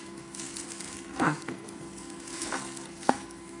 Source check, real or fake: fake